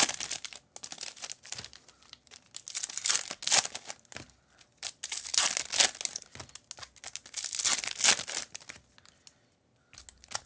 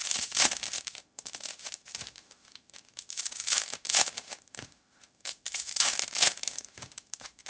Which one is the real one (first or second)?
first